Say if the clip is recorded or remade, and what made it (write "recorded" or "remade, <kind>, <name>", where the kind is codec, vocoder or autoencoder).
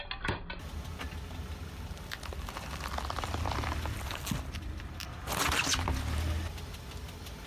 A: recorded